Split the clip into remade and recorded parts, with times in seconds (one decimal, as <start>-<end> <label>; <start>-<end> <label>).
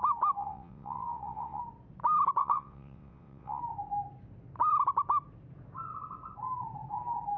0.0-0.4 recorded; 0.4-1.6 remade; 1.6-2.4 recorded; 2.4-3.6 remade; 3.6-7.4 recorded